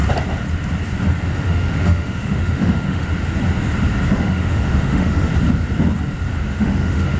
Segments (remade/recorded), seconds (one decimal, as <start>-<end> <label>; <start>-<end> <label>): 0.0-1.3 recorded; 1.3-3.1 remade; 3.1-4.1 recorded; 4.1-5.3 remade; 5.3-6.3 recorded; 6.3-7.2 remade